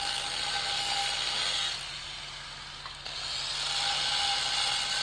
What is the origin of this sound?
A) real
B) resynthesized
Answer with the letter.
A